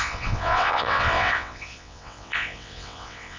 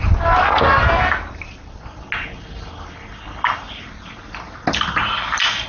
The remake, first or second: first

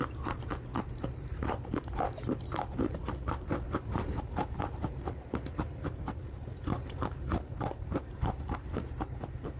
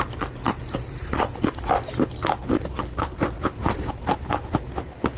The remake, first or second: first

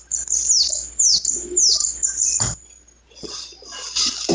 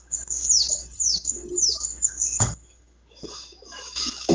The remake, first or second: second